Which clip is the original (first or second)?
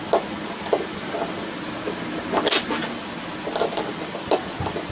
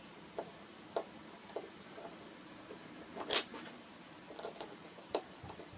first